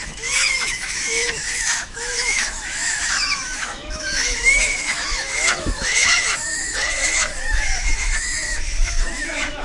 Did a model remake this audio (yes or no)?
yes